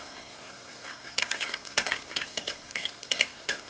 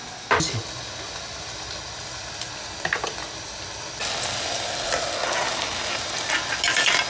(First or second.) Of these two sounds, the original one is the second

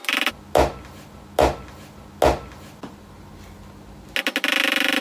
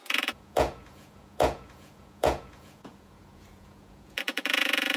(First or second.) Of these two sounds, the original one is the first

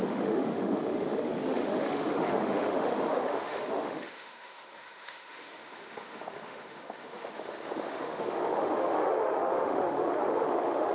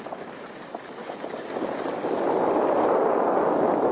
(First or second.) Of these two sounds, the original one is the second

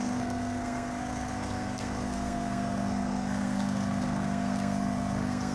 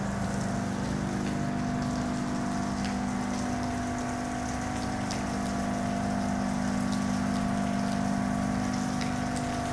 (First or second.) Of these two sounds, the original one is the second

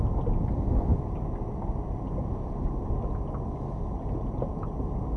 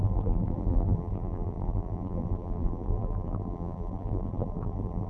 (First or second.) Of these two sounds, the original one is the first